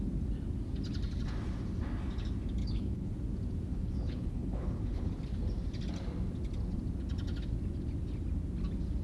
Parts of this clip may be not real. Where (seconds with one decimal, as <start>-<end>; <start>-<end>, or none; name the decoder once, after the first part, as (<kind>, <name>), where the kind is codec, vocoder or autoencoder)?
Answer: 2.6-3.1 (codec, HILCodec); 3.7-5.1